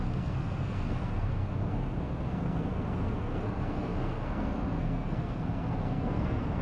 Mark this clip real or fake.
fake